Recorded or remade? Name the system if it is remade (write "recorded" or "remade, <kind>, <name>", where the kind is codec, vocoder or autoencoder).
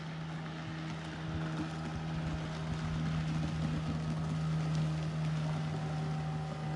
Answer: recorded